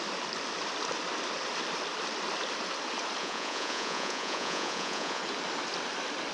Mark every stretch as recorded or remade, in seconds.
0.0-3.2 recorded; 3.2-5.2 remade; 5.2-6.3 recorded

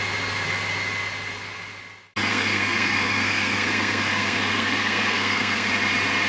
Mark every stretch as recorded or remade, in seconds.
0.0-2.3 recorded; 2.3-5.7 remade; 5.7-6.3 recorded